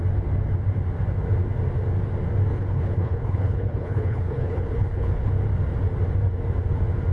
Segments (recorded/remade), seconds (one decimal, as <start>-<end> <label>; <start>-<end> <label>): 0.0-2.5 recorded; 2.5-5.3 remade; 5.3-7.1 recorded